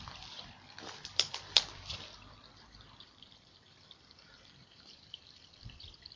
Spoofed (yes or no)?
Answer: yes